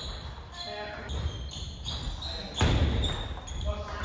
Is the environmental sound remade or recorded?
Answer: recorded